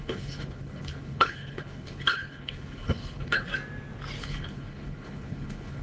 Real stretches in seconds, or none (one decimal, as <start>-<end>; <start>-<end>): 3.5-4.2